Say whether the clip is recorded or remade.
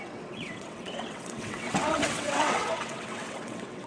remade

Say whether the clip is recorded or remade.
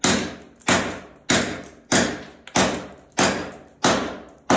recorded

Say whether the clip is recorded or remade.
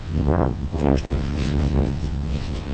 remade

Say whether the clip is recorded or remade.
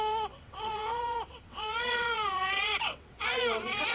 remade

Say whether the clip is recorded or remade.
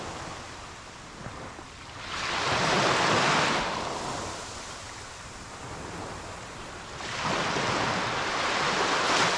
recorded